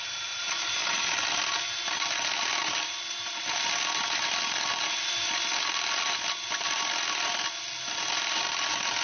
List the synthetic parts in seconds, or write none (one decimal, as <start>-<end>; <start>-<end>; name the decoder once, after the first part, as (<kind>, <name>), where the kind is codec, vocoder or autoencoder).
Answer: none